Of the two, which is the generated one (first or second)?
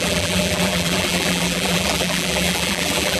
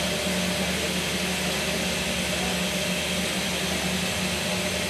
first